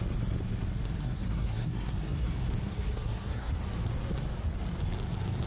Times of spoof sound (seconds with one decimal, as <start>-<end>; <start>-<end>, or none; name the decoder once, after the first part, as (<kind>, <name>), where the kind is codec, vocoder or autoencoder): 1.0-2.3 (codec, SNAC); 2.7-3.6